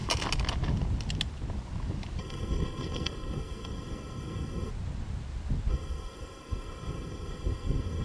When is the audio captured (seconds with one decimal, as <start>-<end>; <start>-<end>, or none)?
0.0-2.2; 4.7-5.7